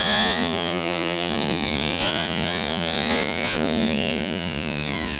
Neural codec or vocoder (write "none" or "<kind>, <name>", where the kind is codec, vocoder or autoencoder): vocoder, Vocos